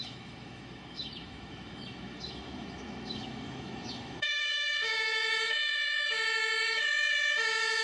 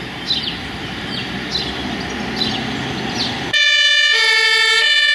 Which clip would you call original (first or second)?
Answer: second